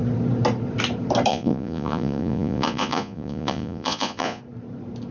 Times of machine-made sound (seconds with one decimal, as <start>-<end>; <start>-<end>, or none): 1.3-4.4